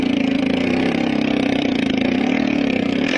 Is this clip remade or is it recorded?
remade